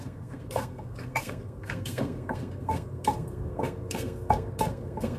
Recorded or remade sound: remade